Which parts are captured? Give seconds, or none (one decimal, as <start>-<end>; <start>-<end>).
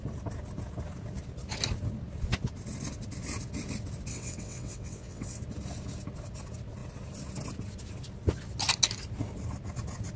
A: 0.0-4.1; 5.4-10.2